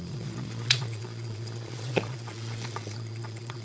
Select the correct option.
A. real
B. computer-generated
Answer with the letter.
B